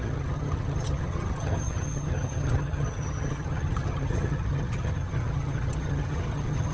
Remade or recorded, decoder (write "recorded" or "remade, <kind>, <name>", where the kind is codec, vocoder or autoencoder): remade, vocoder, HiFi-GAN